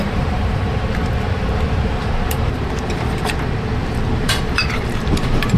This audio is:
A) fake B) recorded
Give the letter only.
A